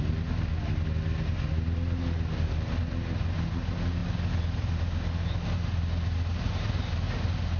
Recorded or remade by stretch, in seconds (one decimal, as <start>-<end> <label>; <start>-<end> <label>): 0.0-7.6 recorded